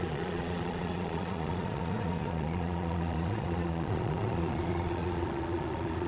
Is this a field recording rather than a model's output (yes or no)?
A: no